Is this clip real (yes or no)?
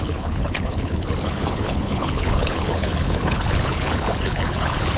no